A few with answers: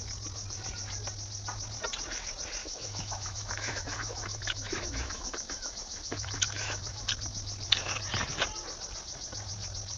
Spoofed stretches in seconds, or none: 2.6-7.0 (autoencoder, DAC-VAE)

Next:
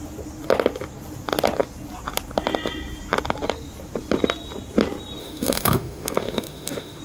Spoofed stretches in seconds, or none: 5.2-7.0 (autoencoder, DAC-VAE)

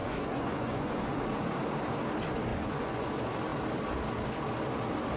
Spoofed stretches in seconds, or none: 0.0-1.2 (vocoder, Vocos); 2.5-3.1

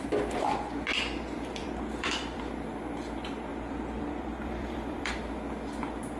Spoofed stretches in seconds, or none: 1.6-2.4 (vocoder, BigVGAN v2); 3.5-5.1

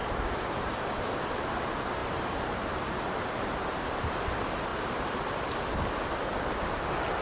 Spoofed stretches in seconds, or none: 0.0-0.8 (vocoder, BigVGAN v2); 2.0-4.1

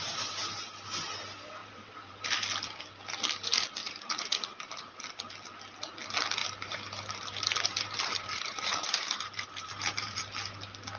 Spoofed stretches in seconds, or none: 1.6-2.4 (vocoder, BigVGAN v2); 3.8-5.0; 6.4-10.2